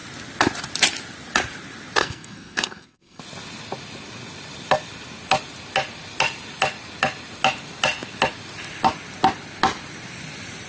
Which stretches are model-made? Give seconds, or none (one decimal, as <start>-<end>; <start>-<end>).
2.0-3.2